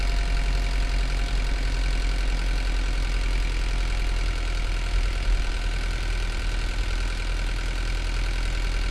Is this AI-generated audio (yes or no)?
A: no